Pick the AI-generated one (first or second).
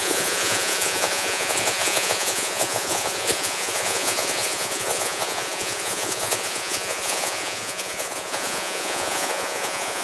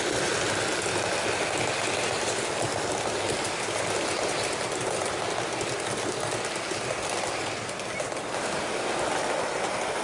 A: first